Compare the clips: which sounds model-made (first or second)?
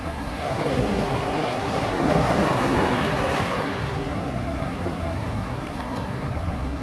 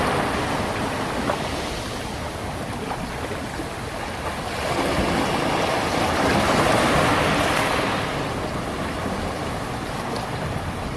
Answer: first